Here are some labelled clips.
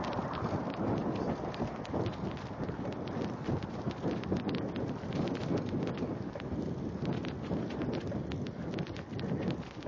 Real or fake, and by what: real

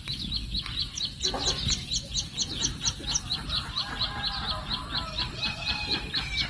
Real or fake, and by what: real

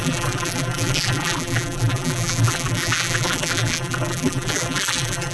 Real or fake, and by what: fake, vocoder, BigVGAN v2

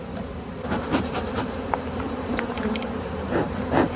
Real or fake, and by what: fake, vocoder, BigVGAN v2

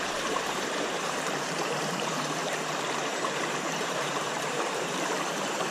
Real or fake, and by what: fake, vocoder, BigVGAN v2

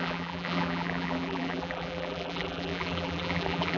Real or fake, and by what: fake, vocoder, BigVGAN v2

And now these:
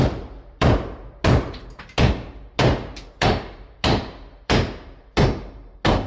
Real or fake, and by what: fake, vocoder, BigVGAN v2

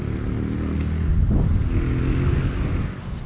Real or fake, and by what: real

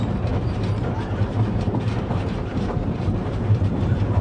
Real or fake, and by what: fake, vocoder, BigVGAN v2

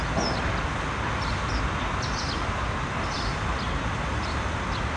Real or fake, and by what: real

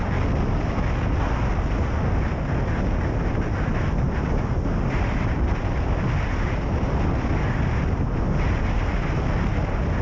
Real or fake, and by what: real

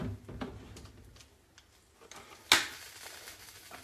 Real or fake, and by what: real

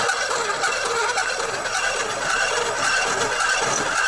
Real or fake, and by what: real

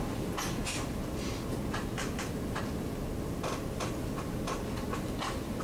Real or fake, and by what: real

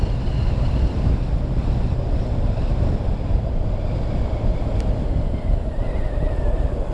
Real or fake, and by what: fake, vocoder, BigVGAN v2